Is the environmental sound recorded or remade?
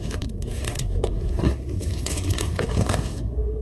remade